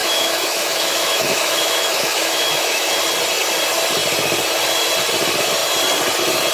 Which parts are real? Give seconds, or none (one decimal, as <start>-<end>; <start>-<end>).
2.9-6.5